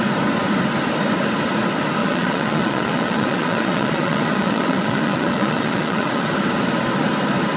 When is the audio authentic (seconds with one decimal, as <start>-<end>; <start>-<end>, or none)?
0.0-2.0; 6.3-7.6